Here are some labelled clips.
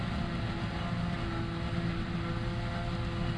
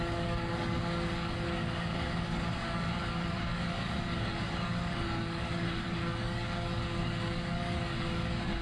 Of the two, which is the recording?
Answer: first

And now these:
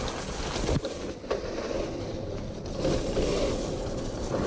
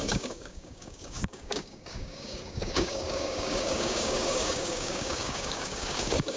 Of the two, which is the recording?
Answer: first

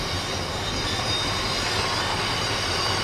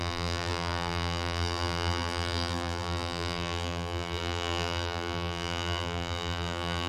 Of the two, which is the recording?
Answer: first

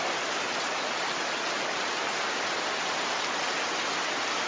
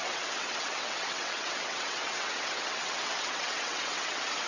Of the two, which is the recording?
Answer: first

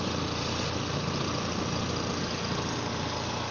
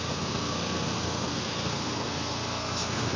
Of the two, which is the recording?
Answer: first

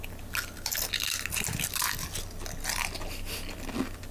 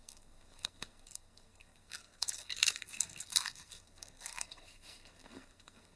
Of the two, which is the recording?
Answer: first